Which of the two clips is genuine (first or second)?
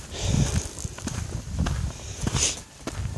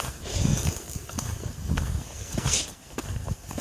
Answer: first